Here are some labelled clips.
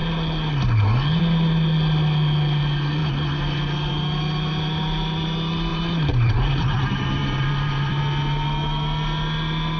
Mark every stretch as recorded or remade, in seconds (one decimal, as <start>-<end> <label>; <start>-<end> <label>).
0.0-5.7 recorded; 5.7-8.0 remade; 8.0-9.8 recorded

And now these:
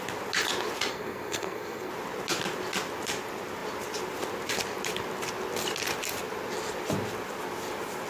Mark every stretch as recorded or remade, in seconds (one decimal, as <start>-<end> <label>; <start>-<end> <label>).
0.0-0.9 recorded; 0.9-1.9 remade; 1.9-8.1 recorded

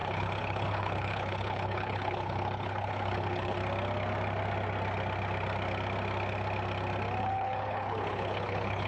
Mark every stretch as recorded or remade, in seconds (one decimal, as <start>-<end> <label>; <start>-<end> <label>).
0.0-3.6 remade; 3.6-7.2 recorded; 7.2-8.9 remade

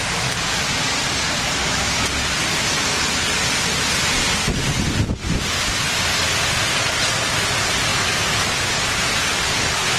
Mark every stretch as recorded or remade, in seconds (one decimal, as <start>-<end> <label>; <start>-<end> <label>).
0.0-1.6 recorded; 1.6-2.1 remade; 2.1-7.9 recorded; 7.9-8.7 remade; 8.7-10.0 recorded

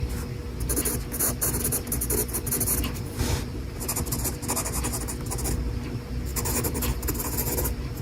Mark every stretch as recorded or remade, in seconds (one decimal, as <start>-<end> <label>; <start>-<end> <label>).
0.0-2.8 recorded; 2.8-4.3 remade; 4.3-8.0 recorded